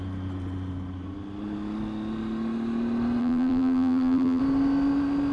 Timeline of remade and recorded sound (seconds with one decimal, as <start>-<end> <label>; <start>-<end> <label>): 0.0-3.2 recorded; 3.2-4.4 remade; 4.4-5.3 recorded